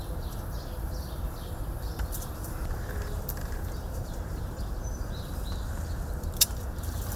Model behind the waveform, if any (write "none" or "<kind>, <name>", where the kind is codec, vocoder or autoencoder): vocoder, BigVGAN v2